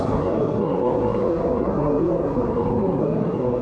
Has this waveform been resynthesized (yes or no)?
yes